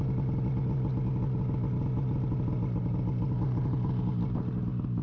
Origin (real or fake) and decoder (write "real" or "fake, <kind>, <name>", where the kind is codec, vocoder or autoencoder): real